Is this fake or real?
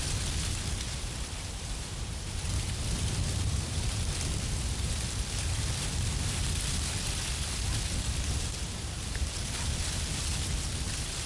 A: real